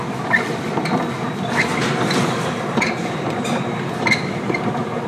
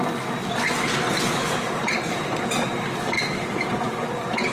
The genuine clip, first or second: second